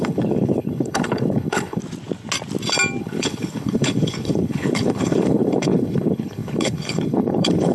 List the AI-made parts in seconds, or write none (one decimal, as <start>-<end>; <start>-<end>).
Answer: 0.0-1.8; 3.0-7.7